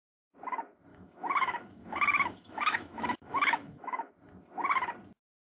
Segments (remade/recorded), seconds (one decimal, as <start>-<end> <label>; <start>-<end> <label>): 0.0-0.9 recorded; 0.9-4.1 remade; 4.1-5.6 recorded